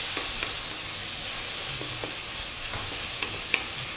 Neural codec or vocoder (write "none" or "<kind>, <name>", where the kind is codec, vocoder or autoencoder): none